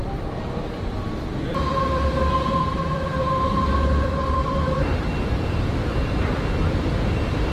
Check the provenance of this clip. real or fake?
fake